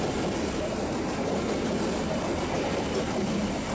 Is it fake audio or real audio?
real